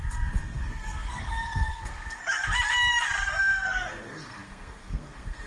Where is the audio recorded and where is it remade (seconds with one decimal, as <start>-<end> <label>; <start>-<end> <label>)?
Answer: 0.0-2.2 remade; 2.2-3.4 recorded; 3.4-5.5 remade